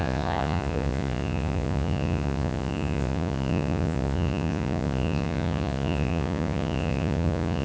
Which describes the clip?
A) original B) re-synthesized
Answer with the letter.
B